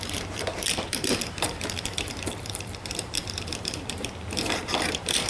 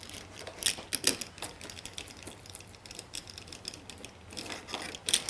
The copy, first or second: first